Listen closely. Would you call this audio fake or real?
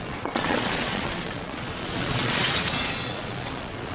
fake